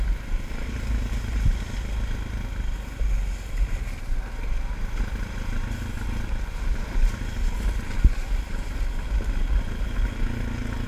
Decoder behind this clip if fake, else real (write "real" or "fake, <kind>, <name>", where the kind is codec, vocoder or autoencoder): real